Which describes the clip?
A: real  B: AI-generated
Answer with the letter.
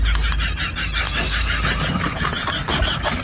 A